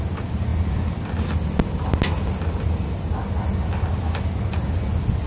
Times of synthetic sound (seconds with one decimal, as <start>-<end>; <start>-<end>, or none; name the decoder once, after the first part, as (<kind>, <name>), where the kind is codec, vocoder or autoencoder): none